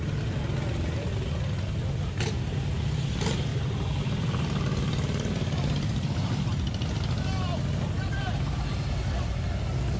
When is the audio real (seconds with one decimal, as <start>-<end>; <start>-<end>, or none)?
0.0-3.5; 6.5-10.0

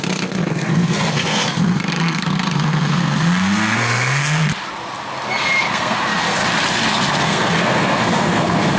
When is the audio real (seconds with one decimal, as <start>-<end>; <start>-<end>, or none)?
4.5-5.7; 6.4-7.2

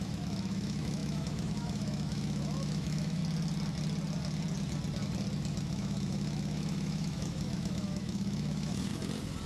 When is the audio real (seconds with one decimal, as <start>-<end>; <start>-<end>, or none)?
3.2-5.7; 8.9-9.5

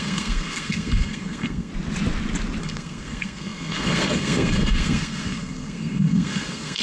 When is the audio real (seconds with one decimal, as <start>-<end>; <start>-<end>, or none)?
1.7-2.6

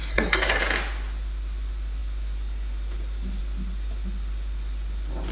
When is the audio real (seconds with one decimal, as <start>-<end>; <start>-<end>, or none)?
0.6-5.3

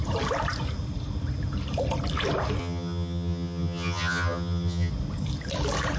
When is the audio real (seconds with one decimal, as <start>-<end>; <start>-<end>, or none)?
0.0-2.6; 4.9-6.0

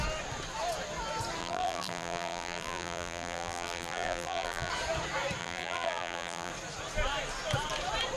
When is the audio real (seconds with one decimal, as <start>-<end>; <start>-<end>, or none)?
0.0-1.4; 4.7-5.4; 6.5-8.2

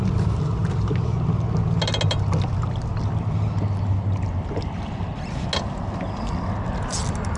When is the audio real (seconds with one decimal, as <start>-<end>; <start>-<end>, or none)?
0.0-7.4